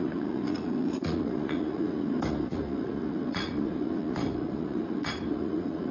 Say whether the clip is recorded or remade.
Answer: remade